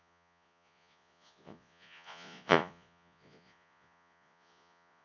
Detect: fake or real fake